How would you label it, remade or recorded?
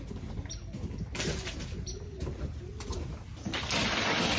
recorded